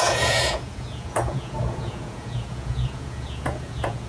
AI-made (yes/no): yes